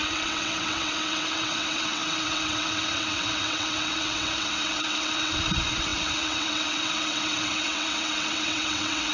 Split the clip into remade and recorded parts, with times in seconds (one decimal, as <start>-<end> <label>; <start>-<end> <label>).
0.0-9.1 remade